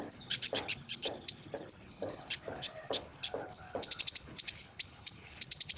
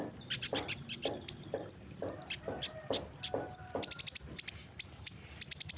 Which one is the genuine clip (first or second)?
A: second